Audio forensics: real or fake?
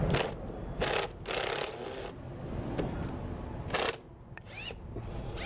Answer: real